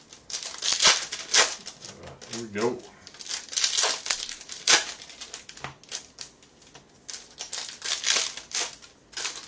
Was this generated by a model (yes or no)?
no